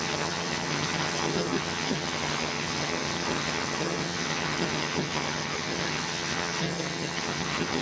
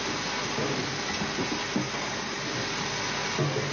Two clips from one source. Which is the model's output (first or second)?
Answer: first